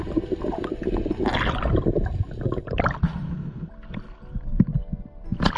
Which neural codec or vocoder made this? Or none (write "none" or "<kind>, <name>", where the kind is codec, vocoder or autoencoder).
none